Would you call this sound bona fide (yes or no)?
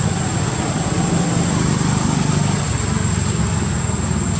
yes